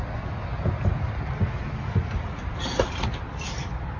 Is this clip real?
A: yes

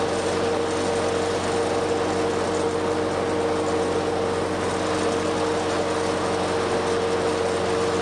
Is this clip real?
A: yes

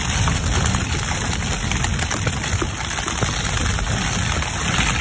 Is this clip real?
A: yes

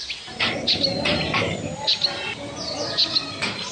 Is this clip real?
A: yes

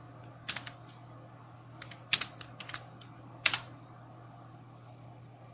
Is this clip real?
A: yes